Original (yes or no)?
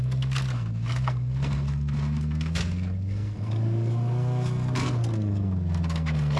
no